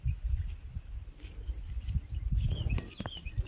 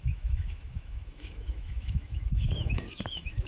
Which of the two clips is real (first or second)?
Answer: first